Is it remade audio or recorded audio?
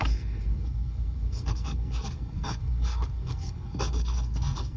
remade